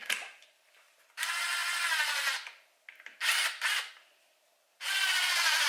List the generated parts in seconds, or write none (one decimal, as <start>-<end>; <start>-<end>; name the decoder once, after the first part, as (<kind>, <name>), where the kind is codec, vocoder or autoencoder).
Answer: none